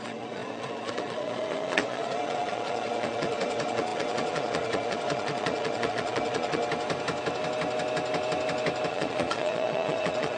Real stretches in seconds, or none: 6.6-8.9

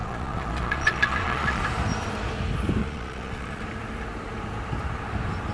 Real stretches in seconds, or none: 1.6-2.8; 3.6-5.5

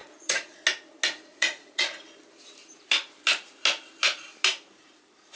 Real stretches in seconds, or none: 0.6-1.3; 2.0-5.4

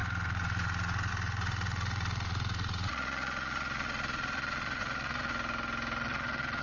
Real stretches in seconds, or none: 5.3-6.0

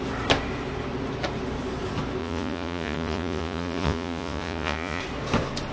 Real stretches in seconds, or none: 0.0-2.2; 5.0-5.7

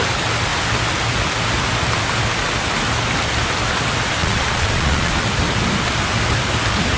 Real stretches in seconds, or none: 0.0-4.2; 5.1-7.0

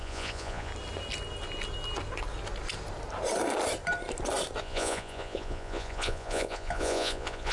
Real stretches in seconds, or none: 0.7-4.6